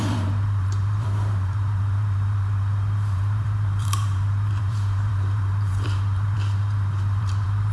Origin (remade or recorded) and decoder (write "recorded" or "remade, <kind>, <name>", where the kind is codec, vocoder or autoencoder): remade, vocoder, BigVGAN v2